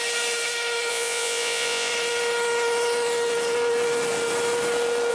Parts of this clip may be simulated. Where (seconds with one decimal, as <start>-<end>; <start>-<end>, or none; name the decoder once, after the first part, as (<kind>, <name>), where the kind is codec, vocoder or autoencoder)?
0.9-1.9 (vocoder, Vocos)